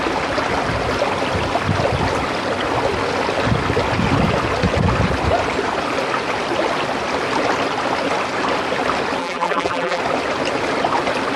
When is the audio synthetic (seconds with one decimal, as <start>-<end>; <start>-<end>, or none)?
9.2-10.0